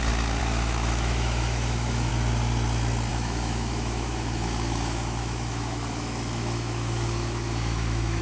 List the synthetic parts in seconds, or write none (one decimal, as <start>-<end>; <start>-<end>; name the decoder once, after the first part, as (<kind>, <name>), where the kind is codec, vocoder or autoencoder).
0.4-2.1 (autoencoder, DAC-VAE); 3.1-8.2